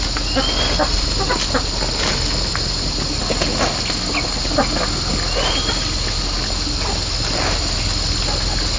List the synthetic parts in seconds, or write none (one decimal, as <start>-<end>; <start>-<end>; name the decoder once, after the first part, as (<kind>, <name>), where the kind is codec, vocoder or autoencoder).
none